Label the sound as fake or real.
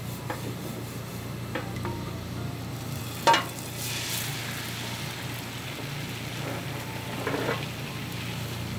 real